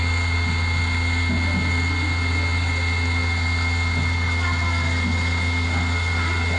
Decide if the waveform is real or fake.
real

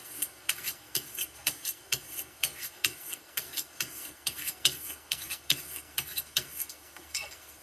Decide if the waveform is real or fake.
fake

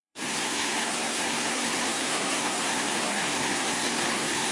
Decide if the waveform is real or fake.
fake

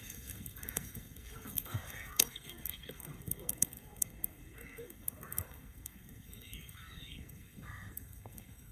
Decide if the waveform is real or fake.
fake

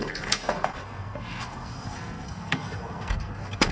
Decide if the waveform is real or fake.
fake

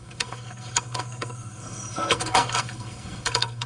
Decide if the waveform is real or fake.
fake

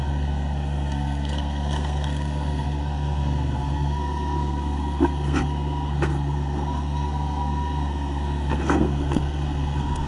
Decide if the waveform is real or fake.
fake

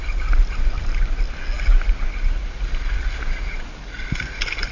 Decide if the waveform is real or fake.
real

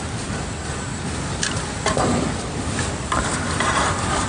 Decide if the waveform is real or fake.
real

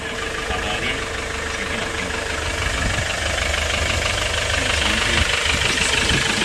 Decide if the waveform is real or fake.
real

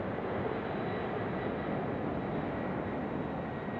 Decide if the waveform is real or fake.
real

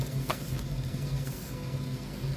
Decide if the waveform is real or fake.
fake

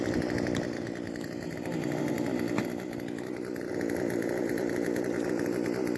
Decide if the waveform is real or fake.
real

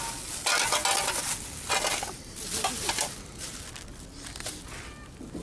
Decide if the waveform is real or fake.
real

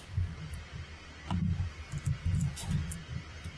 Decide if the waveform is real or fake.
real